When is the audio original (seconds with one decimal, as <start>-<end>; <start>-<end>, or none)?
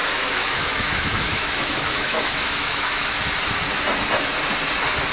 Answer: 3.1-5.1